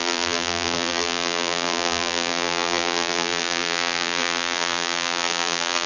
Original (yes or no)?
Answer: no